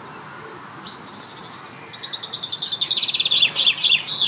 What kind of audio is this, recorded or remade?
recorded